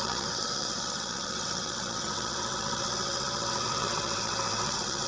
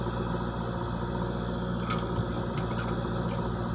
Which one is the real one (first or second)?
second